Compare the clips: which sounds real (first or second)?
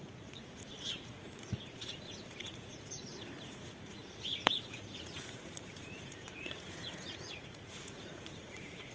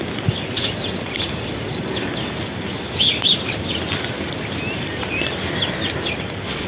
second